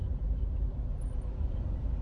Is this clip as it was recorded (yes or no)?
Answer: yes